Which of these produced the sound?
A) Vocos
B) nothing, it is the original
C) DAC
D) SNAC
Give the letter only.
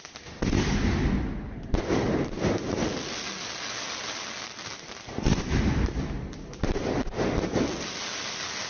B